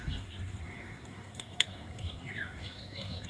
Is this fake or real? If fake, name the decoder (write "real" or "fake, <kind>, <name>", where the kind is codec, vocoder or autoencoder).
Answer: fake, codec, SNAC